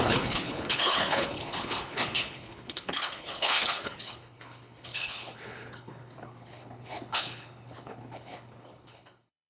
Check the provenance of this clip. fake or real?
fake